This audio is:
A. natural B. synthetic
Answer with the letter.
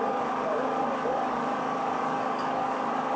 B